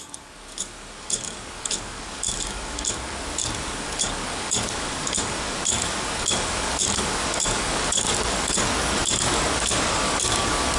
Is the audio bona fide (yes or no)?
no